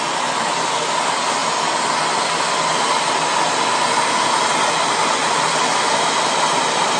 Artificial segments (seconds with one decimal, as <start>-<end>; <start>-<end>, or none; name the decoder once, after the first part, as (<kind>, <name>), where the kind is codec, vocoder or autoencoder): none